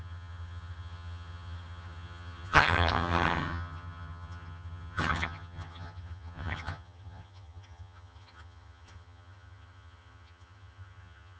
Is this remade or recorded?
remade